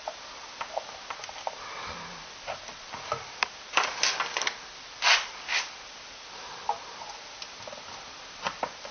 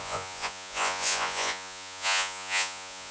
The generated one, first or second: second